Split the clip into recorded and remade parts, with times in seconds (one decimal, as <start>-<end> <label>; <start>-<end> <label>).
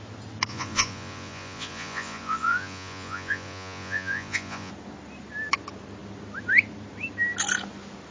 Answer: 0.0-0.5 recorded; 0.5-4.7 remade; 4.7-8.1 recorded